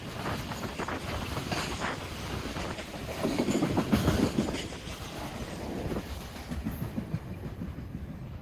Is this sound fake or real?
real